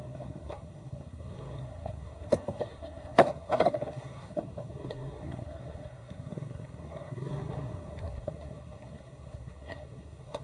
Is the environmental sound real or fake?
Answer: fake